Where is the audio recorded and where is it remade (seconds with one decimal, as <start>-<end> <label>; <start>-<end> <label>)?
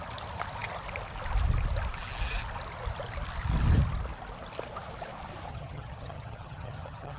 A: 0.0-5.5 recorded; 5.5-7.2 remade